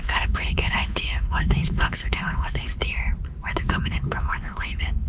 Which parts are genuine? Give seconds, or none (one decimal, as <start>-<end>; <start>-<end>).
2.8-3.6